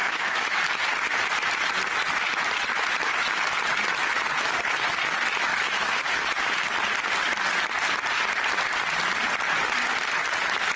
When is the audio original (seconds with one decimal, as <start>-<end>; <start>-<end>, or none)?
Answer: 0.6-5.5; 6.3-10.8